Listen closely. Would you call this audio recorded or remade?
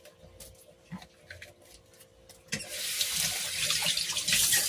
recorded